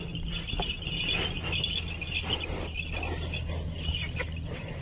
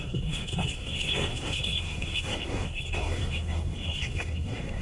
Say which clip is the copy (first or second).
second